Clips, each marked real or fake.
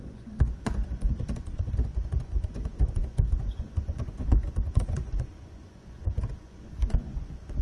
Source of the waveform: fake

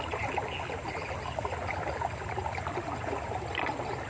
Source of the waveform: real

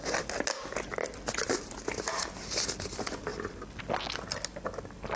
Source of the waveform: real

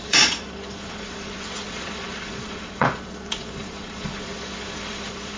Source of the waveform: fake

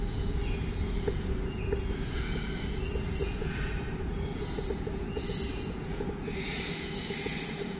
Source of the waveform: fake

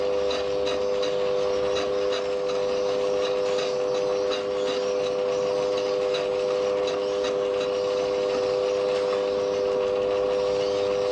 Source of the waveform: real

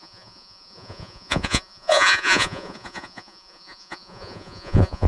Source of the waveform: fake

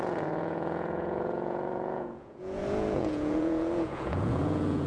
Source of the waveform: fake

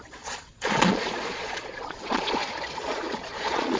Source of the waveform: fake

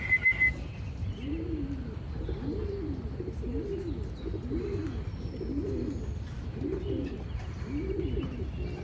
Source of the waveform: real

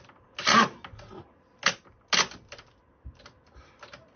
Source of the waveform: real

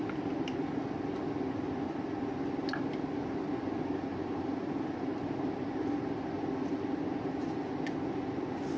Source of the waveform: real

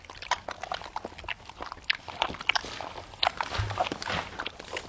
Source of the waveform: real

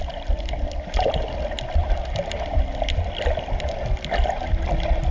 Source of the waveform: real